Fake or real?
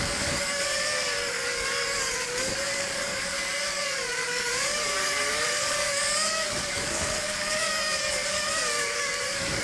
fake